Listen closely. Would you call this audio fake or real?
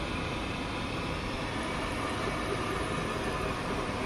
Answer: real